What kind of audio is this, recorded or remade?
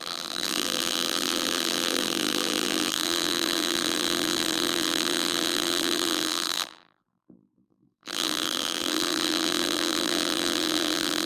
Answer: remade